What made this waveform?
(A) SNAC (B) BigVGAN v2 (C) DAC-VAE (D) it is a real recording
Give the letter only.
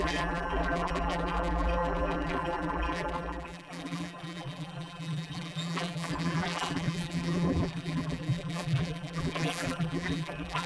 B